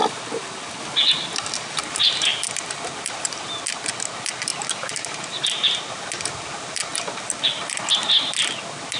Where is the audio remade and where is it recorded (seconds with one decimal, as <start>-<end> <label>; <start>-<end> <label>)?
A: 0.0-0.8 remade; 0.8-2.3 recorded; 2.3-3.8 remade; 3.8-6.9 recorded; 6.9-7.8 remade; 7.8-9.0 recorded